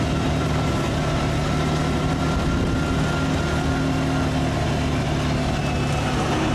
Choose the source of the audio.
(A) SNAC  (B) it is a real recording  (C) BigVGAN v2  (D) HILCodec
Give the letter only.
B